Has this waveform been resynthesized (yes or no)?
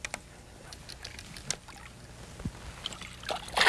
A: no